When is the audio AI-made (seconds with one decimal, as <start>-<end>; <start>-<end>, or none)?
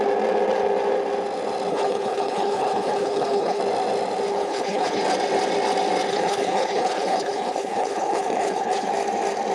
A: 1.7-3.6; 4.3-5.0; 6.1-8.9